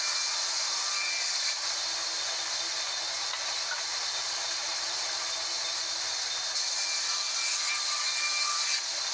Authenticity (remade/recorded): recorded